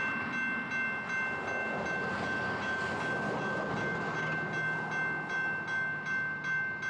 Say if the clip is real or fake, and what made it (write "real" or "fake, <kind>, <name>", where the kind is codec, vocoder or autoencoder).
real